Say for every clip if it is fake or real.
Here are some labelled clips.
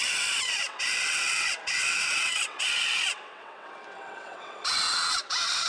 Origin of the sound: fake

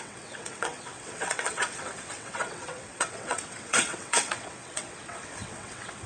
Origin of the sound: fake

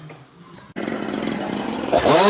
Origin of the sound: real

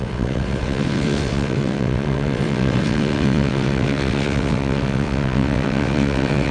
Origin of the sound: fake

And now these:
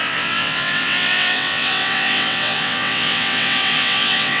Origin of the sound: fake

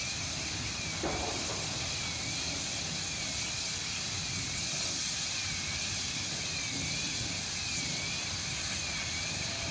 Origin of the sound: real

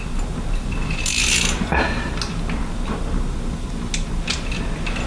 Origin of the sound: real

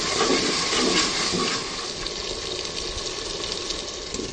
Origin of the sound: real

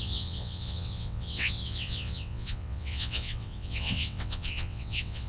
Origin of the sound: fake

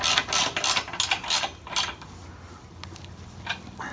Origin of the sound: real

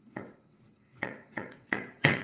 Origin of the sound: fake